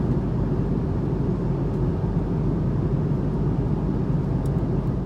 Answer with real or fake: real